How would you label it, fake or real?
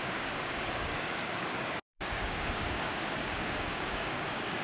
fake